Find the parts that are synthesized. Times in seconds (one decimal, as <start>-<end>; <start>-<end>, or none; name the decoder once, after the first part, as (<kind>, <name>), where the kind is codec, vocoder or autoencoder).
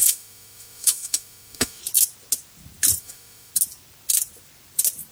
0.0-1.8 (autoencoder, DAC-VAE); 3.0-3.5